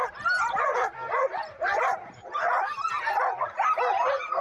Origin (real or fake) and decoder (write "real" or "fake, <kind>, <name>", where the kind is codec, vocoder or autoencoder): fake, vocoder, BigVGAN v2